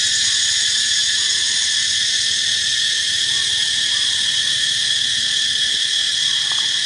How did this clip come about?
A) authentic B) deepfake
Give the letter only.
A